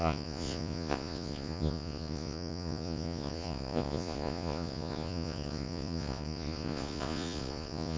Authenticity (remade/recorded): remade